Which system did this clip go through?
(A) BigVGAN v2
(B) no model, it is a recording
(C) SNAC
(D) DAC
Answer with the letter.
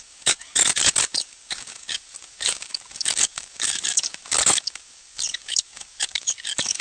D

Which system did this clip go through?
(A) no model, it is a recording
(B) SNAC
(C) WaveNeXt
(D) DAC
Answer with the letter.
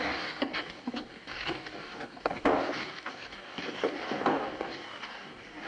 D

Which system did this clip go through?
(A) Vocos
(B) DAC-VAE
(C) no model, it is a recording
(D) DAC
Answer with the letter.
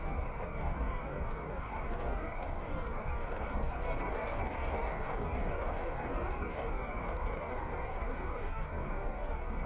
D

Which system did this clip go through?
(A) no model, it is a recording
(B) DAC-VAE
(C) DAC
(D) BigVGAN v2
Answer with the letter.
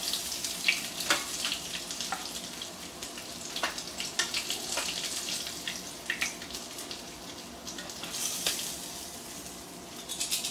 A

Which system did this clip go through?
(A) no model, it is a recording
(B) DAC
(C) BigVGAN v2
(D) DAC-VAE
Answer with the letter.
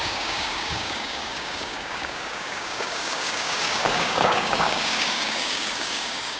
B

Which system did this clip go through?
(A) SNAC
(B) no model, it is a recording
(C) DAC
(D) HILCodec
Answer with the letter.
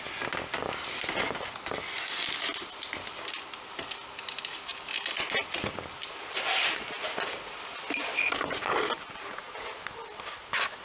B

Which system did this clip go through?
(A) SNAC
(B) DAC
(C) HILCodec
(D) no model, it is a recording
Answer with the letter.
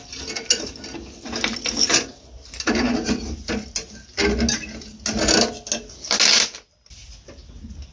D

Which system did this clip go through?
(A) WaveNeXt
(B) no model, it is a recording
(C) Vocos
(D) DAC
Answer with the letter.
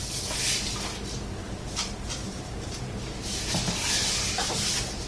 B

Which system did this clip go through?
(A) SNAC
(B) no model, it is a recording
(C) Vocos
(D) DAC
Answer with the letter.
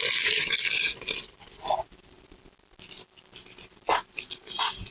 B